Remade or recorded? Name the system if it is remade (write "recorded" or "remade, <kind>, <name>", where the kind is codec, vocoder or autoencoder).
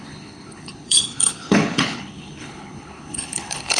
remade, codec, HILCodec